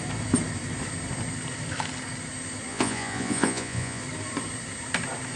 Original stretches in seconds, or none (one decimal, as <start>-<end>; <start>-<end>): 0.0-2.7; 4.0-5.4